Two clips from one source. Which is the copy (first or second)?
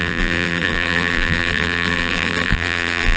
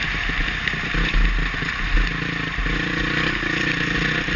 first